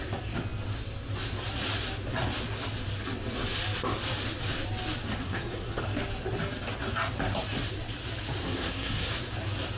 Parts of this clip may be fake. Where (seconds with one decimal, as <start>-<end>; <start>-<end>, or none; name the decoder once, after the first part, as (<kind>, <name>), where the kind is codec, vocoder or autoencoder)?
5.2-5.8 (codec, SNAC); 8.4-9.1